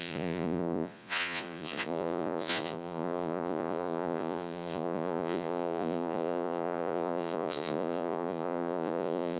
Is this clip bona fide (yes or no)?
no